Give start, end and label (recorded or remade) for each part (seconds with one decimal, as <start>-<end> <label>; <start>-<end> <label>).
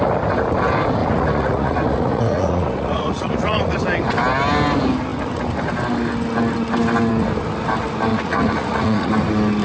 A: 0.0-1.0 recorded; 1.0-3.8 remade; 3.8-8.1 recorded; 8.1-9.1 remade; 9.1-9.6 recorded